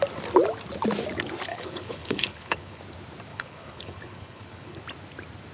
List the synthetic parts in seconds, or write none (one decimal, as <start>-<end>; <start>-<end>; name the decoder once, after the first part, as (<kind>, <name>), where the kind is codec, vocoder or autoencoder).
1.5-2.8 (codec, HILCodec); 3.3-4.8